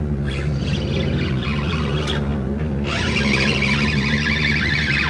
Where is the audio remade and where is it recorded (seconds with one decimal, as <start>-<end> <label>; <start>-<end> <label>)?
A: 0.0-0.6 remade; 0.6-1.3 recorded; 1.3-5.1 remade